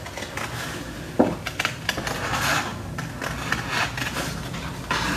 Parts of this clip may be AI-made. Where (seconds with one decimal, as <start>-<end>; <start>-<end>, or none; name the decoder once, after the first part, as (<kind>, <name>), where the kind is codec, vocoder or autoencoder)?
none